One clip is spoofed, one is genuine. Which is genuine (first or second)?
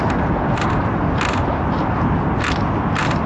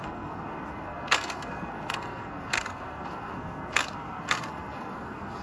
first